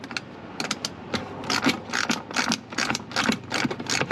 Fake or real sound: real